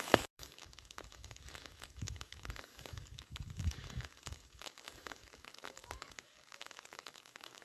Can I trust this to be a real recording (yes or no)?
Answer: no